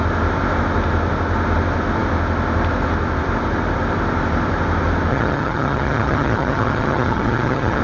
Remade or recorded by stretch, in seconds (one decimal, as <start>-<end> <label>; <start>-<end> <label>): 0.0-5.1 recorded; 5.1-7.8 remade